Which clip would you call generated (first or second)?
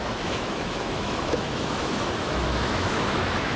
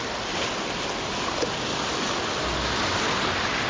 first